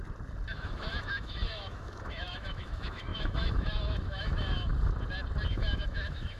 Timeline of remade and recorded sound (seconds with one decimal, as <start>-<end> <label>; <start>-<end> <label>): 0.0-0.5 recorded; 0.5-4.7 remade; 4.7-5.5 recorded; 5.5-6.4 remade